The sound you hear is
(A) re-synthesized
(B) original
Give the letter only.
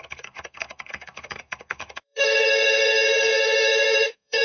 A